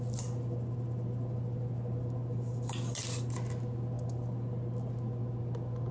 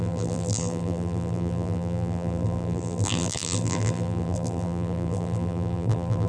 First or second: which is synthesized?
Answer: second